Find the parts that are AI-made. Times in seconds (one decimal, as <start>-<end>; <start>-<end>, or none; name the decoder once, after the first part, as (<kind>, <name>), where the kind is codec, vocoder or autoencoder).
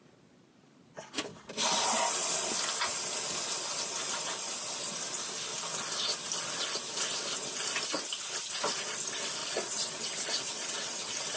9.4-11.4 (vocoder, WaveNeXt)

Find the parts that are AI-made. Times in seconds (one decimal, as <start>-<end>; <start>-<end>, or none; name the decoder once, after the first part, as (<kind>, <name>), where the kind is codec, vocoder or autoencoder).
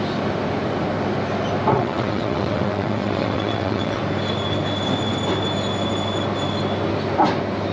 1.7-4.0 (vocoder, WaveNeXt)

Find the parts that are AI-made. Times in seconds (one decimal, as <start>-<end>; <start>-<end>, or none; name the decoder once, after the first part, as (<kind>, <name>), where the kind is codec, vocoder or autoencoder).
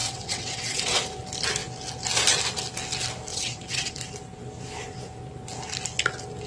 0.0-1.0 (vocoder, WaveNeXt); 3.3-3.9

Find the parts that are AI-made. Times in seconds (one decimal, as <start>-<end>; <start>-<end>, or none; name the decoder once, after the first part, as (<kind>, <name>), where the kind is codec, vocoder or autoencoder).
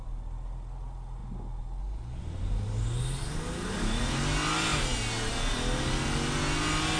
none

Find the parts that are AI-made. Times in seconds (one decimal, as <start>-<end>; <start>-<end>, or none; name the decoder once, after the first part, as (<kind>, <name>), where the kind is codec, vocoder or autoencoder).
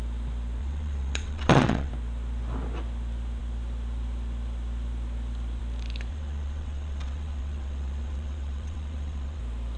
0.6-1.9 (vocoder, WaveNeXt); 6.1-9.4